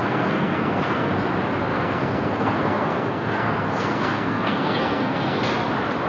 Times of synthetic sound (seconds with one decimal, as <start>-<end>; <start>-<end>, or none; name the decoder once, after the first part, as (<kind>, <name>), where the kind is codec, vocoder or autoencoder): 0.0-1.1 (codec, SNAC); 1.7-5.4